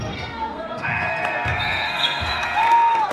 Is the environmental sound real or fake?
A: fake